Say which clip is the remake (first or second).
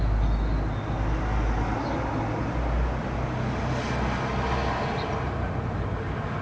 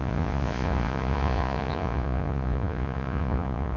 second